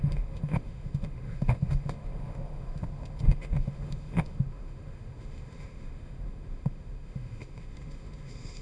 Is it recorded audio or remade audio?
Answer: remade